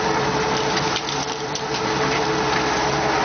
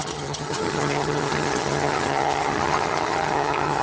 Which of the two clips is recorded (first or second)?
first